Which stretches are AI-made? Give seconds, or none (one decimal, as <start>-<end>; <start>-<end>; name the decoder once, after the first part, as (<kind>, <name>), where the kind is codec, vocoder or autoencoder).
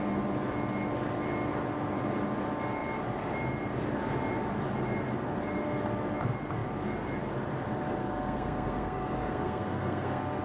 8.0-10.4 (codec, SNAC)